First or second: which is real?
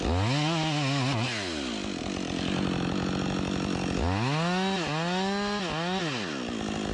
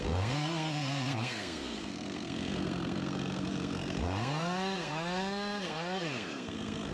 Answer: first